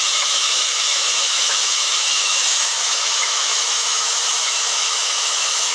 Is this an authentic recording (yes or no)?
no